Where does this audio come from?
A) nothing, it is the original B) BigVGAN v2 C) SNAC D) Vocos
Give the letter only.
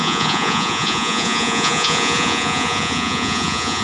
D